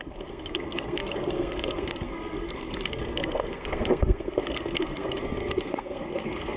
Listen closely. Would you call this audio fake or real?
fake